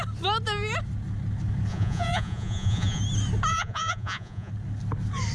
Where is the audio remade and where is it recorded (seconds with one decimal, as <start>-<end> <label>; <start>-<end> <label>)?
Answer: 0.0-1.7 recorded; 1.7-3.0 remade; 3.0-3.5 recorded; 3.5-4.5 remade; 4.5-5.3 recorded